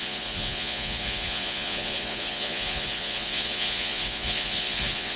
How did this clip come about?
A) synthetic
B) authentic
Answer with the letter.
A